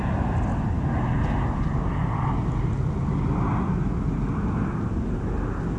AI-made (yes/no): no